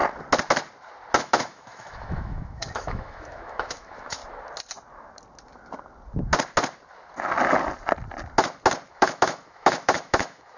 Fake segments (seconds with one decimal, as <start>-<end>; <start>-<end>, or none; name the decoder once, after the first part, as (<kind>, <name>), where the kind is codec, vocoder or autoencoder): 1.2-4.2 (autoencoder, DAC-VAE); 8.9-10.6